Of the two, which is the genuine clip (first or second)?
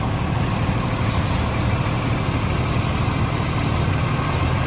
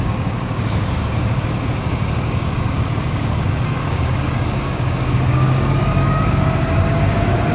first